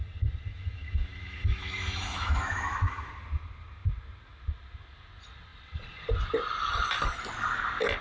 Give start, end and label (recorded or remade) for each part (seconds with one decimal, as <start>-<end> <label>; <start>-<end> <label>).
0.0-0.5 recorded; 0.5-3.1 remade; 3.1-8.0 recorded